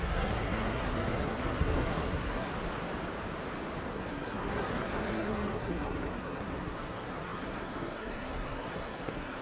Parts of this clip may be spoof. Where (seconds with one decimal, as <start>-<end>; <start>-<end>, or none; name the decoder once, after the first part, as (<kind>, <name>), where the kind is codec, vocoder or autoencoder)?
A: 0.0-2.5 (codec, SNAC); 3.9-9.4